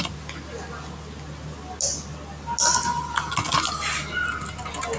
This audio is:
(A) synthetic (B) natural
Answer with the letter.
B